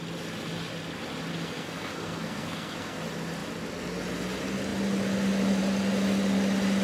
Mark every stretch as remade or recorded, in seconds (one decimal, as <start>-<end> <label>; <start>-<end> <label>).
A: 0.0-1.3 recorded; 1.3-3.0 remade; 3.0-6.8 recorded